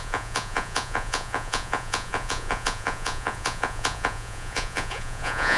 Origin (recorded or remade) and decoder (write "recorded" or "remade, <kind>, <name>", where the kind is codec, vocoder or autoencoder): remade, vocoder, Vocos